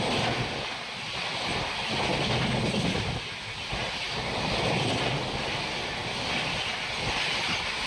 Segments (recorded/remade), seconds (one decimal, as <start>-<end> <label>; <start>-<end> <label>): 0.0-7.9 recorded